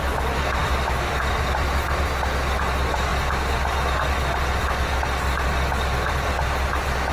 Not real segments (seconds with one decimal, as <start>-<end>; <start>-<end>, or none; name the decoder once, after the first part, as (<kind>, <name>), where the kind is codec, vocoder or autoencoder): 0.6-1.7 (vocoder, BigVGAN v2)

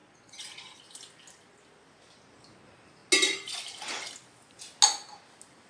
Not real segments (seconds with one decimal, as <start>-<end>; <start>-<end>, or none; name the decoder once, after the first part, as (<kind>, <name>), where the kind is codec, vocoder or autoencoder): 0.0-0.8 (vocoder, Vocos)